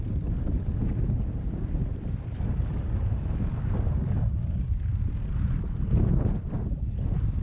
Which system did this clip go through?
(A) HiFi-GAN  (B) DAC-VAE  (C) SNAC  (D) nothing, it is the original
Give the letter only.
D